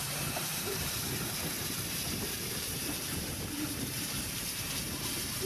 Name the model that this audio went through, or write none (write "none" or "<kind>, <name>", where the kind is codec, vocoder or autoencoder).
vocoder, BigVGAN v2